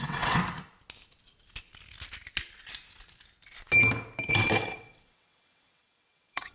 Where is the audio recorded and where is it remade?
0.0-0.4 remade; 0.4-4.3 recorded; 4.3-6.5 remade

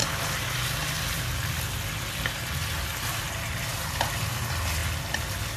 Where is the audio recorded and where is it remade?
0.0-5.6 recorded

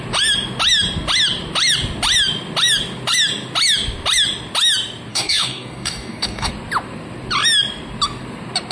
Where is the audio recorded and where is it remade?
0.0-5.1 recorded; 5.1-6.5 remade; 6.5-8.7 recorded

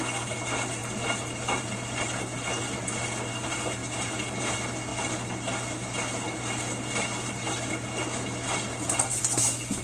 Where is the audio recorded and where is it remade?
0.0-9.8 recorded

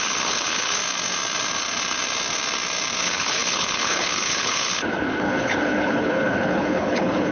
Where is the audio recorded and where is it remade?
0.0-0.8 remade; 0.8-3.0 recorded; 3.0-7.3 remade

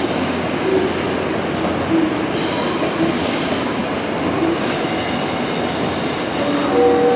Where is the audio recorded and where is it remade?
0.0-0.7 remade; 0.7-3.1 recorded; 3.1-3.8 remade; 3.8-7.2 recorded